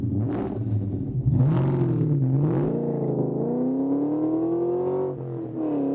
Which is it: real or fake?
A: real